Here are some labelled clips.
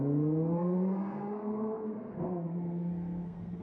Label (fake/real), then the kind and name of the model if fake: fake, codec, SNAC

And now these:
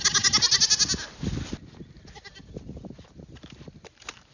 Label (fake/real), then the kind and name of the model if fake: real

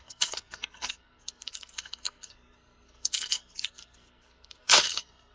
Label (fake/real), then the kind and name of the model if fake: fake, codec, SNAC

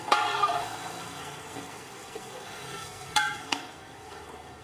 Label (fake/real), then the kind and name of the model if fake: fake, codec, SNAC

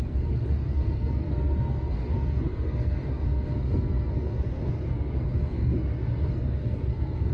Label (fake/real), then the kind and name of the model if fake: fake, codec, SNAC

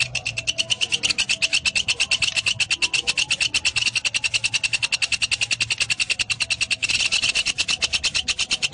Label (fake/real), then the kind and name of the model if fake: real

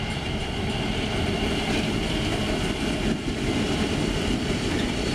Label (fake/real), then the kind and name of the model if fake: real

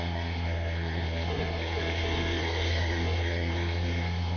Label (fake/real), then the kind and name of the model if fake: fake, codec, SNAC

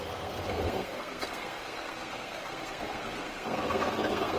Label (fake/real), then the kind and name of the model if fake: fake, codec, SNAC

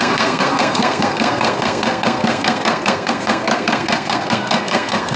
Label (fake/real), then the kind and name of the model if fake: fake, codec, SNAC